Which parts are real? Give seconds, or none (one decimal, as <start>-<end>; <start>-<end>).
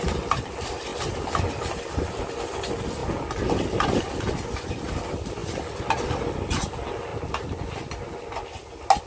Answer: 0.0-9.1